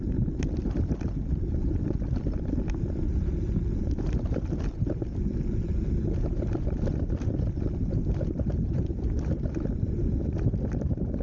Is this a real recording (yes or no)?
yes